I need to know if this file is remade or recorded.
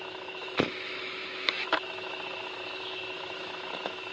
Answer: remade